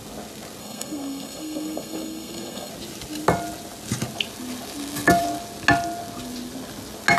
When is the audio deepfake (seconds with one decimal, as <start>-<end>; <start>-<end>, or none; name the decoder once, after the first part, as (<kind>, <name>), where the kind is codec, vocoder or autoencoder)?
0.6-2.7 (codec, SNAC)